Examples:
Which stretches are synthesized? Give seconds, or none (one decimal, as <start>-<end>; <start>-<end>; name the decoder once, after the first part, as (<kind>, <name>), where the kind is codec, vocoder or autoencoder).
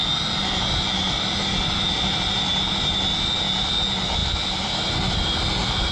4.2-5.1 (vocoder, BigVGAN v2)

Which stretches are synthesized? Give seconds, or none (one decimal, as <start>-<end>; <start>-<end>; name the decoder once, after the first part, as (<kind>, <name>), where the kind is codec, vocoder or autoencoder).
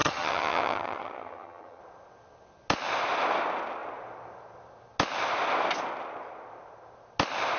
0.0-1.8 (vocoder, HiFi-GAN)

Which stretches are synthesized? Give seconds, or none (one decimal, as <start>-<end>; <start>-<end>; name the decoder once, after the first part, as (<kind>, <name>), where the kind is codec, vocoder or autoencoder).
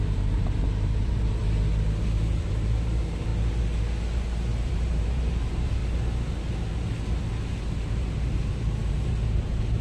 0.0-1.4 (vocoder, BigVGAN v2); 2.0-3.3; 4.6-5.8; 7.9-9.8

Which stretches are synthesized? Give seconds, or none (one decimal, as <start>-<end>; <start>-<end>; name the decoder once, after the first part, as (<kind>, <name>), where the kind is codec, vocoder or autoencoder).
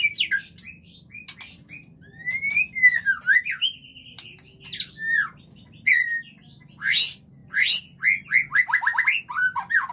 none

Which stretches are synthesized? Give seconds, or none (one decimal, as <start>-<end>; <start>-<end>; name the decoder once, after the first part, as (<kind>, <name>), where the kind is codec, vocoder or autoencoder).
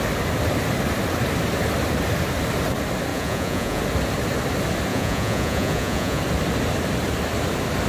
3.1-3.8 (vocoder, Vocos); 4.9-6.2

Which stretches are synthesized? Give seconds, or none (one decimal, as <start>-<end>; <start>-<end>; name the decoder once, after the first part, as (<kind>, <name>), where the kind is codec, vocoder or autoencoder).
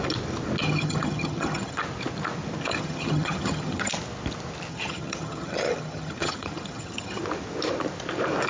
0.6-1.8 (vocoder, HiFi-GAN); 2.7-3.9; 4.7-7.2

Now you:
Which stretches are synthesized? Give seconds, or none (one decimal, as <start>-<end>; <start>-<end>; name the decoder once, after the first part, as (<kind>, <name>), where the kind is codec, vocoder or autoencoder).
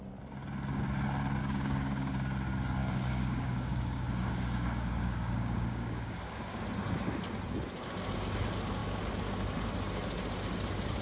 1.4-2.1 (codec, DAC); 2.8-6.6